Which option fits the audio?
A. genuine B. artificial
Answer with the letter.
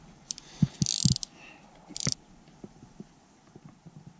A